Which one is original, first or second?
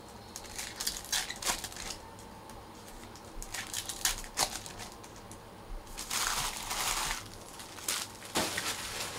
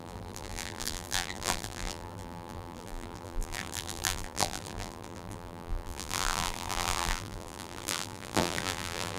first